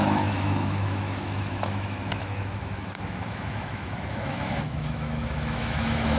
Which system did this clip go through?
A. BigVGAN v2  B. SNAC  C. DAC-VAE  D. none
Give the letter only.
C